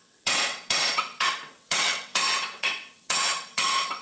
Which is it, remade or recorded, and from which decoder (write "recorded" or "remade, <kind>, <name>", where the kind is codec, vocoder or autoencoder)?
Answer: remade, vocoder, WaveNeXt